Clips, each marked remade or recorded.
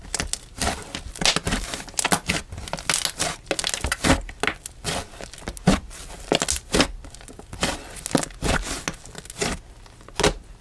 recorded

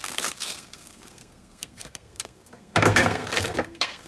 remade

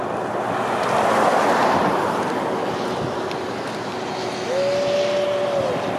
recorded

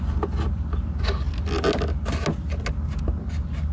recorded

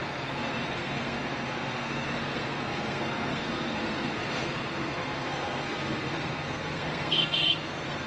remade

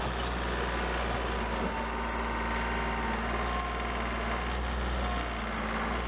recorded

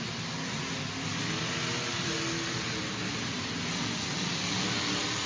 recorded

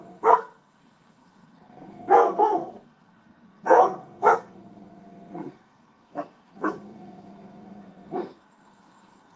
remade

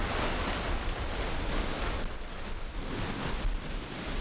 recorded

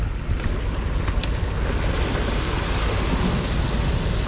recorded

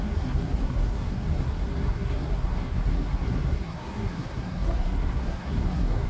remade